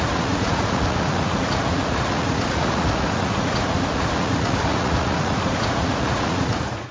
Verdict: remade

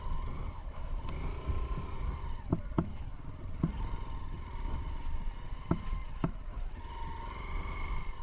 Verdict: recorded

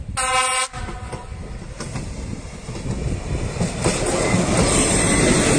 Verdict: recorded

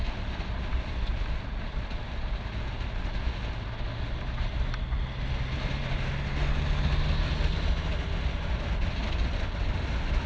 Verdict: recorded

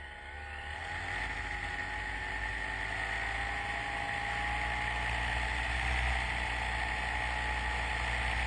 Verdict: recorded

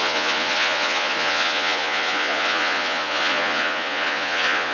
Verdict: remade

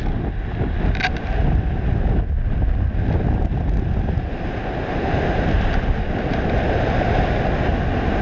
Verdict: recorded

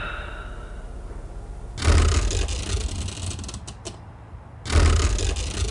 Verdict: recorded